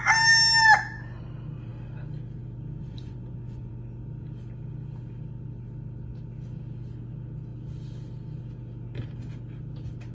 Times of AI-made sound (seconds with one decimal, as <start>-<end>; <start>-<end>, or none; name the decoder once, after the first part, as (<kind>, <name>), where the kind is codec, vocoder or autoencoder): 2.8-3.7 (vocoder, Vocos)